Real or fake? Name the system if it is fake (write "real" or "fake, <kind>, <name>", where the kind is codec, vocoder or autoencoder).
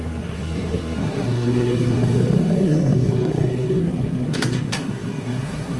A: fake, codec, SNAC